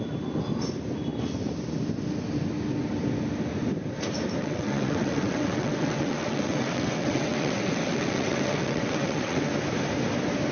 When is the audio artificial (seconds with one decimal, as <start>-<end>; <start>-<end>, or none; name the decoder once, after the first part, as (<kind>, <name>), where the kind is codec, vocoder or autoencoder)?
4.4-9.5 (vocoder, WaveNeXt)